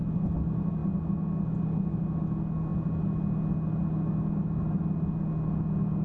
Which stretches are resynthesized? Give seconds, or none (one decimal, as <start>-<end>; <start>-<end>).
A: none